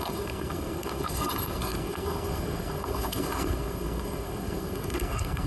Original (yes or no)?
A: no